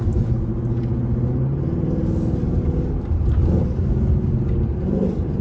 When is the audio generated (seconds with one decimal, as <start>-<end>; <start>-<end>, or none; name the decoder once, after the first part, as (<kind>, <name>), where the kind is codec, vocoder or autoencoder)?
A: 0.0-0.5 (vocoder, BigVGAN v2); 3.0-5.4